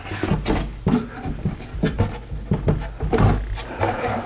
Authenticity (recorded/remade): recorded